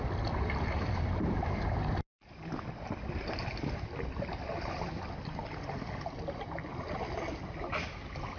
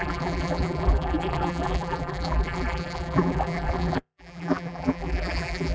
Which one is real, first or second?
first